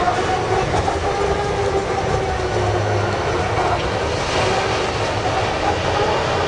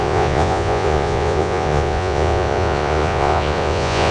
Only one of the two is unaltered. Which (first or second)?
first